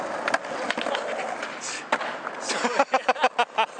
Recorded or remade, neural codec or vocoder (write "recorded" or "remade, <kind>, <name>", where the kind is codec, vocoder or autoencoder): recorded